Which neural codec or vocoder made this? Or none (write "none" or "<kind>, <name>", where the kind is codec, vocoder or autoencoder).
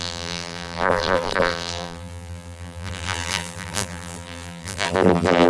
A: vocoder, BigVGAN v2